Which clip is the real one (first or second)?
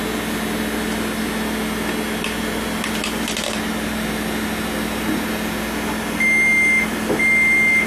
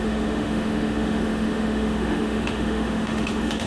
first